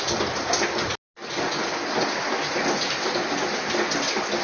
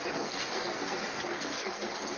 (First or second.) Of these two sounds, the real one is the first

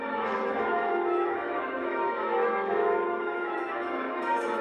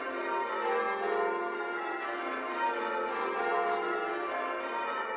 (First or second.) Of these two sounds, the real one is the second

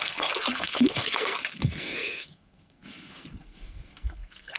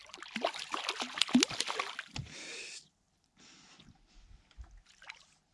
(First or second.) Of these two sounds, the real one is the second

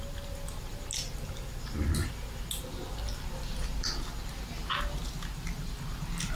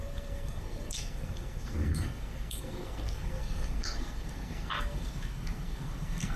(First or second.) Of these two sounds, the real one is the first